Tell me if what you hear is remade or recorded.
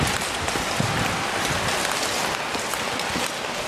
recorded